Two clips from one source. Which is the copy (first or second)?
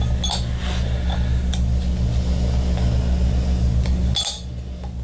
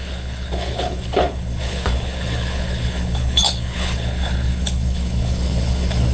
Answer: second